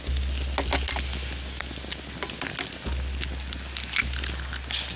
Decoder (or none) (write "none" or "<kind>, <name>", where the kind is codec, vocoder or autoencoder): none